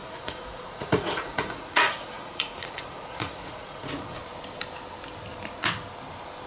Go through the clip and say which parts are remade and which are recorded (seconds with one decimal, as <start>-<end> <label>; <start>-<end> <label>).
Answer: 0.0-3.9 remade; 3.9-6.5 recorded